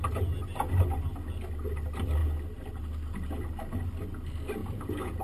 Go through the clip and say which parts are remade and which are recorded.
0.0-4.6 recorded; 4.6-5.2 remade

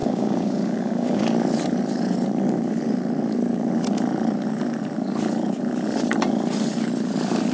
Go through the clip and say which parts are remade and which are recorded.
0.0-1.2 remade; 1.2-7.5 recorded

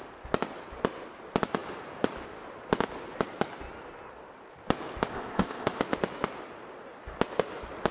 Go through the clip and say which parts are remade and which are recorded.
0.0-5.1 recorded; 5.1-5.8 remade; 5.8-7.9 recorded